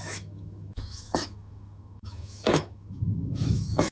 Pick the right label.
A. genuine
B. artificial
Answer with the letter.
B